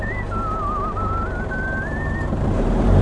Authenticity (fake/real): fake